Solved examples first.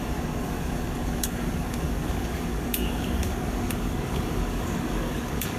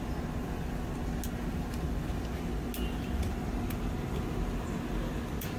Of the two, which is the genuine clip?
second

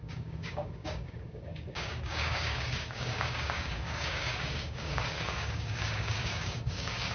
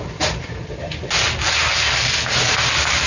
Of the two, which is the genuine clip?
second